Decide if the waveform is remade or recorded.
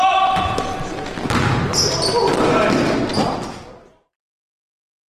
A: recorded